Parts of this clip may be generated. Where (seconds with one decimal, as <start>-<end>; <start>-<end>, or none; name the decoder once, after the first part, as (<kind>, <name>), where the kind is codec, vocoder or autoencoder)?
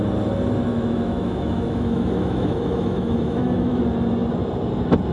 0.7-3.8 (autoencoder, DAC-VAE)